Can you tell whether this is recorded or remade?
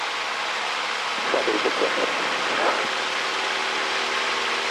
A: recorded